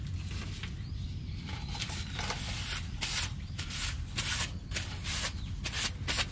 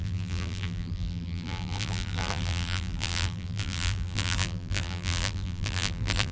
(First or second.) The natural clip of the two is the first